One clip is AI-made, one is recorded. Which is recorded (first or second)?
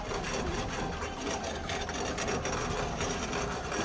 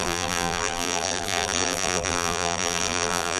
first